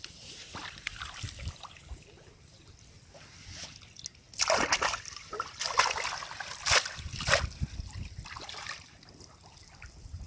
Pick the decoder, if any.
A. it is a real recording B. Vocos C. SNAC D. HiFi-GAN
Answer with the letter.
A